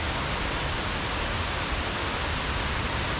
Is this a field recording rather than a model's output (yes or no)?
yes